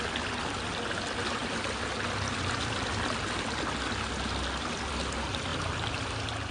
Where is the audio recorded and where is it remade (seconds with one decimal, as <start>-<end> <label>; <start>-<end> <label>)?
0.0-6.5 recorded